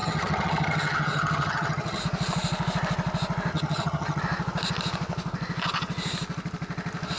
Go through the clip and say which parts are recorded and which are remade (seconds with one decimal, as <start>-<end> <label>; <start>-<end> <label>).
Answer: 0.0-2.0 remade; 2.0-3.5 recorded; 3.5-4.2 remade; 4.2-7.2 recorded

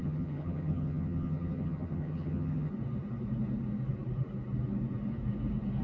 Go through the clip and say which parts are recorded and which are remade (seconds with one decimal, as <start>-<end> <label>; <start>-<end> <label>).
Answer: 0.0-2.7 remade; 2.7-5.8 recorded

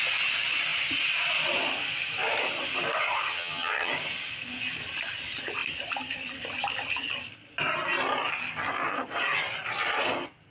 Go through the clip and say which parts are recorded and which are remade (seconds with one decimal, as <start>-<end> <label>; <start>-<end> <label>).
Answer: 0.0-3.3 recorded; 3.3-3.9 remade; 3.9-10.5 recorded

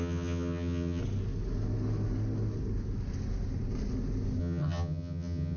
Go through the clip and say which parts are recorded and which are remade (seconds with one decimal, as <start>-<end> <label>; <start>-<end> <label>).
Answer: 0.0-1.0 remade; 1.0-4.4 recorded; 4.4-5.6 remade

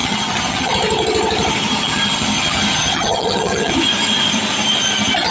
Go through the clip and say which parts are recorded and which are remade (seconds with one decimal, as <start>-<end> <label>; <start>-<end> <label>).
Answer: 0.0-0.7 remade; 0.7-1.7 recorded; 1.7-3.7 remade; 3.7-5.3 recorded

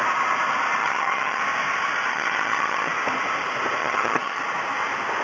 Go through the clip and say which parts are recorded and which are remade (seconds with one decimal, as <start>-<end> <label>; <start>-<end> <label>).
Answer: 0.0-0.8 recorded; 0.8-1.4 remade; 1.4-2.1 recorded; 2.1-2.9 remade; 2.9-3.8 recorded; 3.8-4.4 remade; 4.4-5.2 recorded

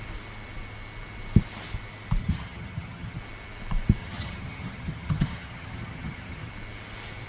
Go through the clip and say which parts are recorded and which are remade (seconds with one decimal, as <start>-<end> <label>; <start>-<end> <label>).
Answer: 0.0-2.2 recorded; 2.2-3.2 remade; 3.2-4.0 recorded; 4.0-6.5 remade; 6.5-7.3 recorded